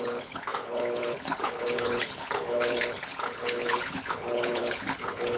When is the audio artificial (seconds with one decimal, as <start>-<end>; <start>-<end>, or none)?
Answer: 0.0-5.4